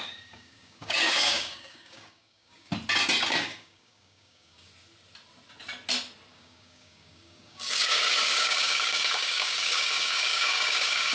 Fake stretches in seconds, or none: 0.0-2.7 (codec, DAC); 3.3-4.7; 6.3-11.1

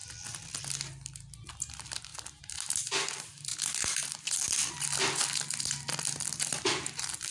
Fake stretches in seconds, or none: none

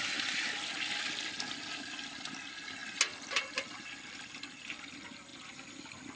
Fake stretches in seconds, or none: none

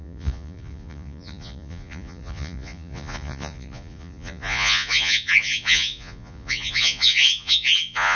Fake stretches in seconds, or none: 0.0-8.2 (vocoder, Vocos)

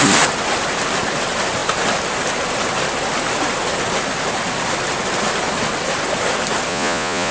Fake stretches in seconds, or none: 6.7-7.3 (vocoder, Vocos)

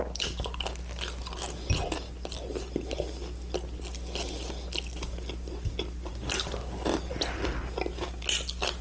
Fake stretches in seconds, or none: none

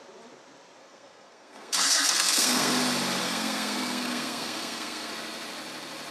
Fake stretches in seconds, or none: 0.8-2.7 (codec, SNAC); 3.2-5.1

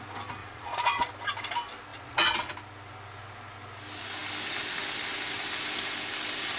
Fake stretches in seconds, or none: 0.4-1.1 (vocoder, Vocos); 1.9-2.5